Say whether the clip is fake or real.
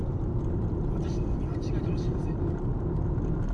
fake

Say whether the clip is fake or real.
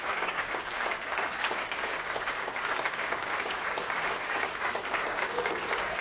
fake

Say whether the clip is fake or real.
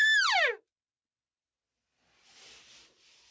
real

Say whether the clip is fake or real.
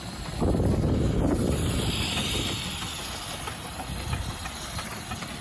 real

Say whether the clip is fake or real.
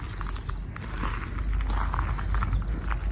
real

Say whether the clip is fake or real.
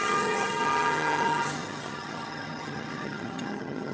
fake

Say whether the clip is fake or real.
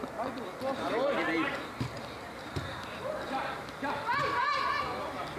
real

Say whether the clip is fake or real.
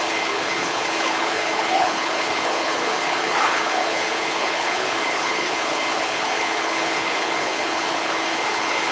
fake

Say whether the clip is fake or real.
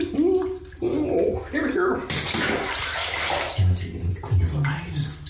real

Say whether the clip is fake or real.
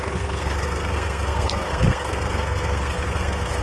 fake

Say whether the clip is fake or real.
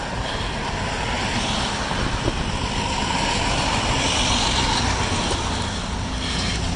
real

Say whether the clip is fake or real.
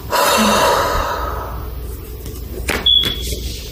real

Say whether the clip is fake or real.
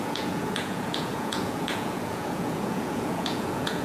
fake